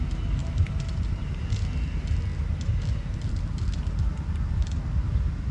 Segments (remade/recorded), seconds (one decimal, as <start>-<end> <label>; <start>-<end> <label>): 0.0-0.4 recorded; 0.4-1.2 remade; 1.2-5.5 recorded